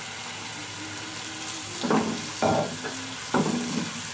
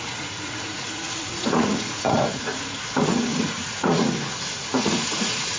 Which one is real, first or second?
first